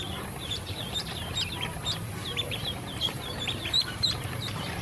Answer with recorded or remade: remade